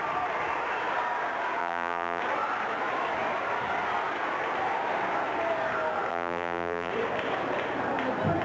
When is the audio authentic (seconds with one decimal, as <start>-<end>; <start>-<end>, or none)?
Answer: 0.0-1.6; 2.2-6.1; 6.9-8.4